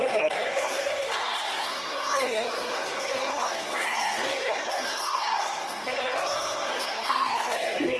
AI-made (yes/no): yes